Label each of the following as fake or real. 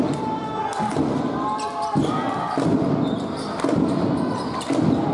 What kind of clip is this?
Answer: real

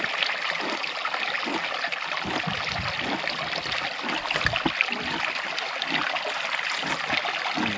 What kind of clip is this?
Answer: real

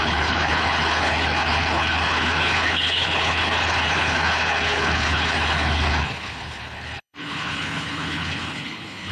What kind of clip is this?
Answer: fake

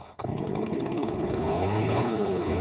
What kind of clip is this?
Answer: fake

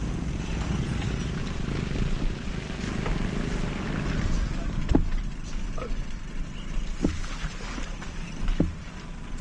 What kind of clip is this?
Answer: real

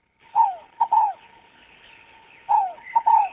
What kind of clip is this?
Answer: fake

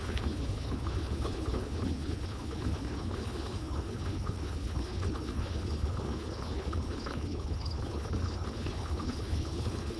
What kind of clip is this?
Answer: fake